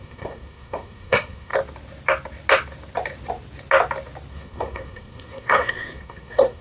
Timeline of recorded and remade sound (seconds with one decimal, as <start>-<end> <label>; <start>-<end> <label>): 0.0-1.5 remade; 1.5-4.3 recorded; 4.3-6.6 remade